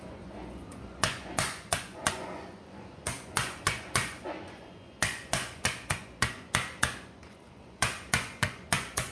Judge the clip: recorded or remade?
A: remade